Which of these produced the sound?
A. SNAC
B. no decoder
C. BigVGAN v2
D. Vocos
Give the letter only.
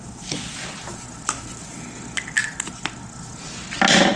B